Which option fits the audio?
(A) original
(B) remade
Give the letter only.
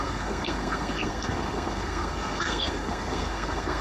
B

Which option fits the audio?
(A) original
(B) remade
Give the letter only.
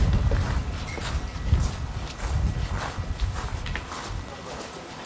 A